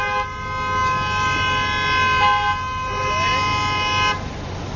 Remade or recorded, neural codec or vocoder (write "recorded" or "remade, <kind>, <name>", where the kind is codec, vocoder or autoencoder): recorded